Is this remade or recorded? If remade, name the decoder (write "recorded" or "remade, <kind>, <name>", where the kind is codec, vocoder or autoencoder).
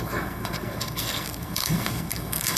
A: remade, codec, SNAC